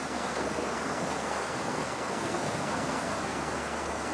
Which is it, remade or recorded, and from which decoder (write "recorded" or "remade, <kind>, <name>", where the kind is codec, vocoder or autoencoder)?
remade, codec, SNAC